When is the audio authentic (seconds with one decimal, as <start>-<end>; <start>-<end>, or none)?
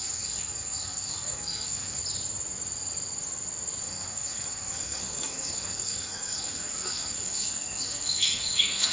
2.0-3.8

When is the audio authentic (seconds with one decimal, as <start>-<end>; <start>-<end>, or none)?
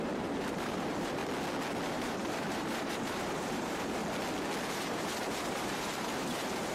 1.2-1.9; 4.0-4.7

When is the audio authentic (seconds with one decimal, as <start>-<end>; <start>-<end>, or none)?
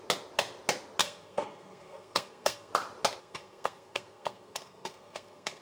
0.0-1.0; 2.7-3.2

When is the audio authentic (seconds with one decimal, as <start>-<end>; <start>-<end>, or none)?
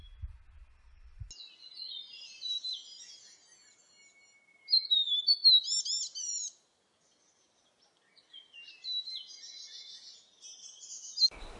0.0-6.1; 6.6-11.6